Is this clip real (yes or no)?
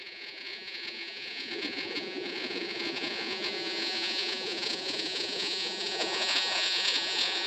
no